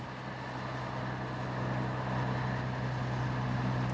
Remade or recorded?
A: recorded